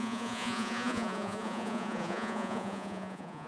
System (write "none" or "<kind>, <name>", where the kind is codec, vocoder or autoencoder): vocoder, Vocos